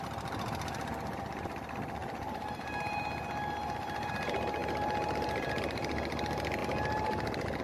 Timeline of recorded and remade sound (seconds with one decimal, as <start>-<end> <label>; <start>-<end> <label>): 0.0-2.0 recorded; 2.0-3.0 remade; 3.0-4.6 recorded; 4.6-5.6 remade; 5.6-7.6 recorded